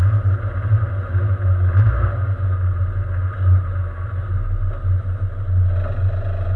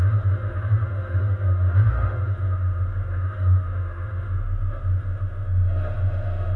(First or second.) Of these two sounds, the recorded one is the first